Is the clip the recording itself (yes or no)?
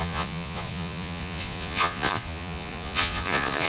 no